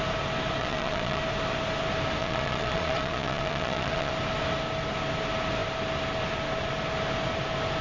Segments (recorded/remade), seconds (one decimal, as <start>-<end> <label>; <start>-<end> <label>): 0.0-0.6 recorded; 0.6-1.2 remade; 1.2-2.2 recorded; 2.2-4.1 remade; 4.1-7.8 recorded